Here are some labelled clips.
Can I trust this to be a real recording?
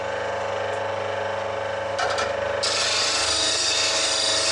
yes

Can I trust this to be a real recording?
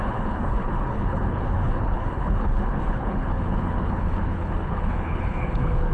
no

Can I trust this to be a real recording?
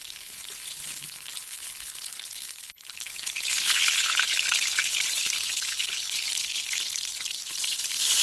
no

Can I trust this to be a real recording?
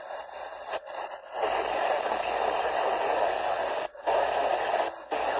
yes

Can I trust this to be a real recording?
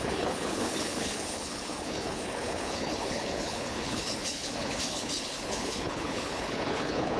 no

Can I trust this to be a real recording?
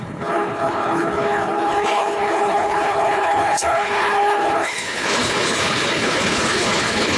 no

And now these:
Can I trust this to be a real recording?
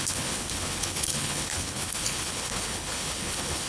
no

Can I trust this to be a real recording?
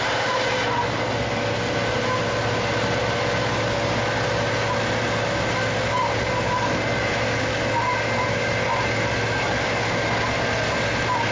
yes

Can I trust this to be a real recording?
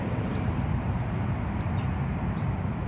yes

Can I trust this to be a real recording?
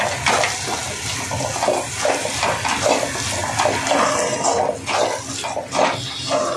yes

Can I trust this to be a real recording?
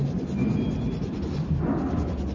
yes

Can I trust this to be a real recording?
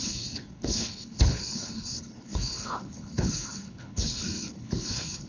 no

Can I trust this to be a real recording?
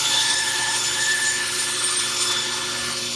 no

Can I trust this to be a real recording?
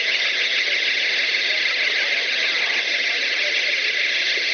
yes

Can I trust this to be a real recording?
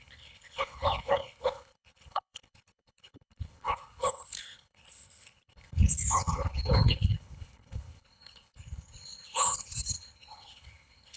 no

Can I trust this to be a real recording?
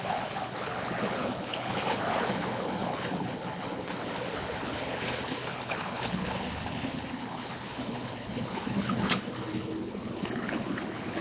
no